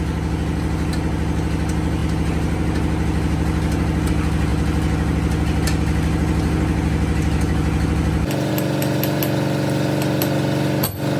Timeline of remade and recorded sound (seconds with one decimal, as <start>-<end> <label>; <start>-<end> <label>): 0.0-11.2 recorded